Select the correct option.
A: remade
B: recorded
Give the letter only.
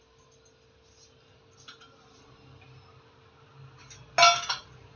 B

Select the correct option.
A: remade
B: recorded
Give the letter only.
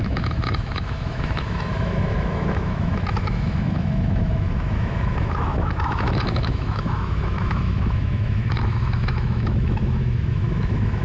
A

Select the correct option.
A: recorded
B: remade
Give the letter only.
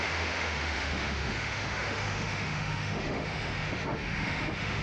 B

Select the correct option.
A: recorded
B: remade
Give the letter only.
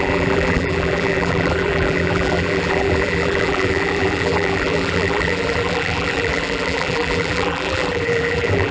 B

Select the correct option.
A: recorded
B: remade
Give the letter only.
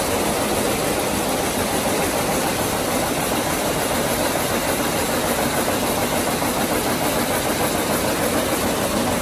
A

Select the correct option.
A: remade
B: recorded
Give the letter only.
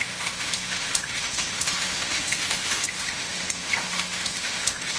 A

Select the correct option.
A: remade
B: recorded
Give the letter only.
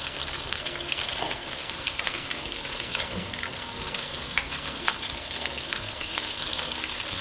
A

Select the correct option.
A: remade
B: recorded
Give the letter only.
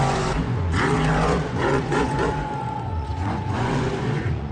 A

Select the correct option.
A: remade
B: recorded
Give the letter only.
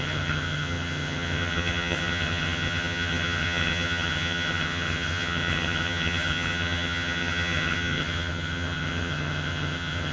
A